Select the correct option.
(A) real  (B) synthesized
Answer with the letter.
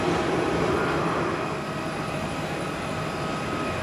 A